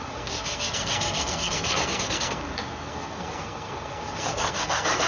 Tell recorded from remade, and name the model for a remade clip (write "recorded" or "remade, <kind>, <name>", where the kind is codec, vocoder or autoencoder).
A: remade, codec, SNAC